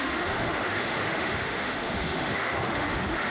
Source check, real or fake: fake